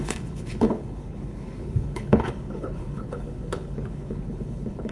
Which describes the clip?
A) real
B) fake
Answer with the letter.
B